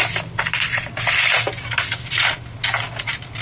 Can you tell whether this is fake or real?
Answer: real